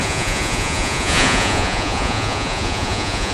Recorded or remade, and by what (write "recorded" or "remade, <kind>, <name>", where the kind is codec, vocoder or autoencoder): remade, vocoder, Vocos